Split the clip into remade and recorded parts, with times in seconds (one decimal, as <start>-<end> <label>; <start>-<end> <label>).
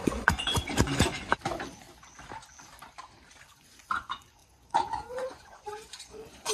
0.0-1.3 remade; 1.3-3.5 recorded; 3.5-6.5 remade